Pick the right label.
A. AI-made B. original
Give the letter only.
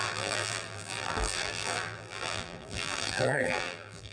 A